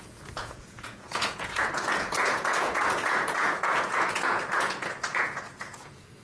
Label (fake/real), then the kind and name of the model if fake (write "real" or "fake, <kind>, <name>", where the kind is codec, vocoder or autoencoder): fake, vocoder, Vocos